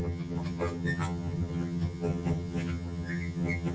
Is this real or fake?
fake